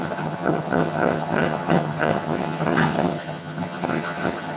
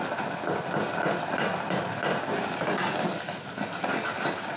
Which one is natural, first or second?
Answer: second